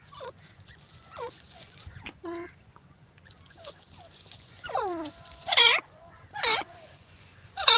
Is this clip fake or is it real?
fake